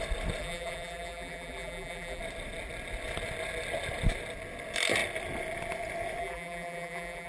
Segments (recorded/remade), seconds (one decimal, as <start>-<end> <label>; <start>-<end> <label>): 0.0-0.4 recorded; 0.4-2.2 remade; 2.2-6.2 recorded; 6.2-7.3 remade